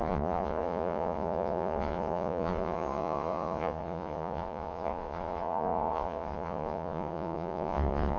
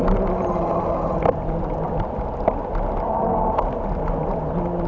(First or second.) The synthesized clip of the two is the first